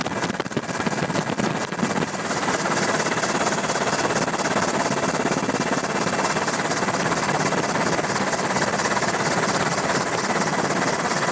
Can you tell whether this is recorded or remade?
recorded